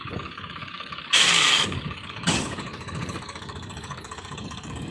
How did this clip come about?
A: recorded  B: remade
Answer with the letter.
B